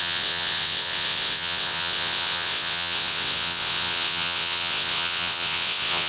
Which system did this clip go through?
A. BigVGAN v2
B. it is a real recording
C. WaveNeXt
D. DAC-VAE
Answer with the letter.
C